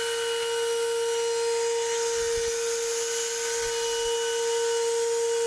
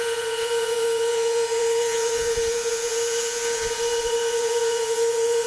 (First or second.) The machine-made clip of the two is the second